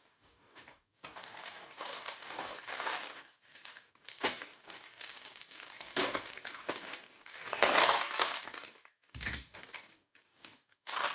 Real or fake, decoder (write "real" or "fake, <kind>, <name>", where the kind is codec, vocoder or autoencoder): fake, codec, DAC